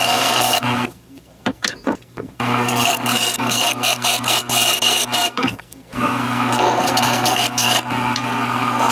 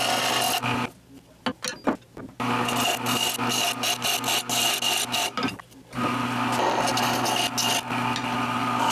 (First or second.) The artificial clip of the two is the first